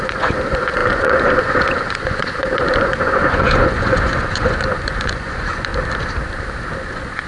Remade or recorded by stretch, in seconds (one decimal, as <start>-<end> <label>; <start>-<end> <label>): 0.0-5.7 remade; 5.7-6.8 recorded; 6.8-7.3 remade